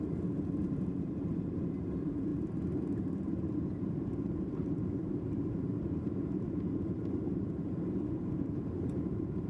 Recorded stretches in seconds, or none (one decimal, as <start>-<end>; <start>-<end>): none